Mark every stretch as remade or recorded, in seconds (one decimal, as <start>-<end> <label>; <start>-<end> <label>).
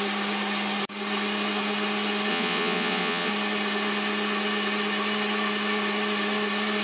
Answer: 0.0-2.3 recorded; 2.3-3.3 remade; 3.3-6.8 recorded